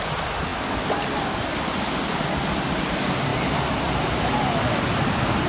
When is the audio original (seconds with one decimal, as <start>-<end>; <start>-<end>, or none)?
0.5-2.5